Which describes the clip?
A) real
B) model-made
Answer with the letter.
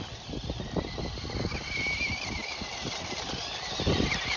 A